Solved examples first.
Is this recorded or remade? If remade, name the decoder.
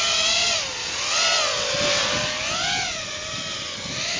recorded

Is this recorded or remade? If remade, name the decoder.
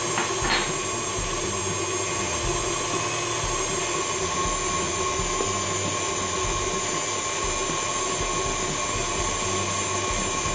recorded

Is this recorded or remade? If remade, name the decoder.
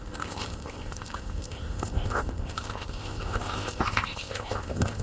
remade, codec, ZipCodec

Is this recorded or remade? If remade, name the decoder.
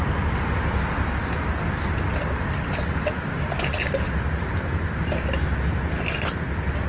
recorded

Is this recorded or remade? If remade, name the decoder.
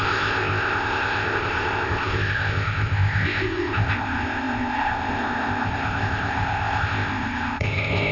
remade, codec, ZipCodec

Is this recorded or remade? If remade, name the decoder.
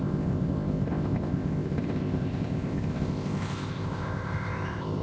remade, codec, ZipCodec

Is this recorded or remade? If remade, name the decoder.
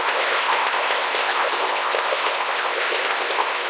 remade, codec, ZipCodec